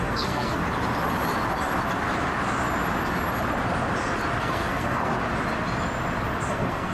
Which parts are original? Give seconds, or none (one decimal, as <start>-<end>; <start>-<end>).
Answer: 0.6-4.4; 5.1-6.5